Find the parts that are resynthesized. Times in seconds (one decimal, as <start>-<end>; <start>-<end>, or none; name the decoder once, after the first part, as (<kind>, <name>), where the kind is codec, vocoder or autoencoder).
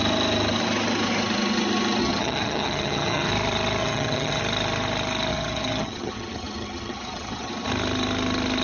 2.0-3.3 (vocoder, HiFi-GAN); 3.8-4.4; 5.3-7.5